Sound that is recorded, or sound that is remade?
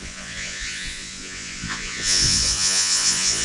remade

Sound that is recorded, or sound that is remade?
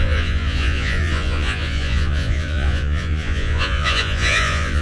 remade